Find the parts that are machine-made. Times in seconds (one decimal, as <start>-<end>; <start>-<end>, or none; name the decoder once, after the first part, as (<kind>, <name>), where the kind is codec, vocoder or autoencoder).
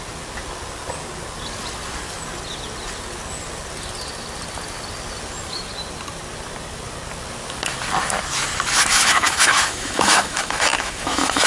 8.9-11.5 (autoencoder, DAC-VAE)